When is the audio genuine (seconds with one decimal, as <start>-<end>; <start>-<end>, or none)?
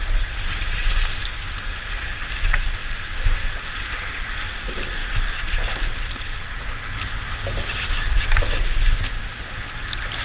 0.0-10.2